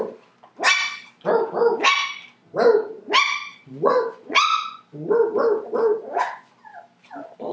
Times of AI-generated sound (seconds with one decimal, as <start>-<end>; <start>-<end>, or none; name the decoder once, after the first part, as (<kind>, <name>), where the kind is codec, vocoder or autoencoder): 3.5-4.8 (vocoder, Vocos); 5.9-6.5